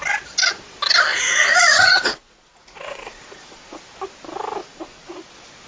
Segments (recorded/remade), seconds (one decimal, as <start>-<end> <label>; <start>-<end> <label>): 0.0-1.1 recorded; 1.1-3.8 remade; 3.8-4.6 recorded; 4.6-5.3 remade; 5.3-5.7 recorded